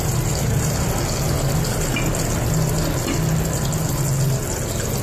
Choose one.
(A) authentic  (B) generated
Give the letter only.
A